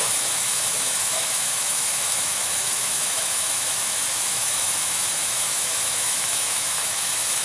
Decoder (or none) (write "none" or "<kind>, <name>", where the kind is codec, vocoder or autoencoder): autoencoder, DAC-VAE